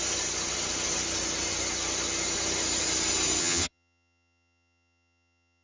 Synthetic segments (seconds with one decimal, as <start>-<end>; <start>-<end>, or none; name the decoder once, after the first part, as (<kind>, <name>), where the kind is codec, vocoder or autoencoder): 3.4-5.6 (vocoder, HiFi-GAN)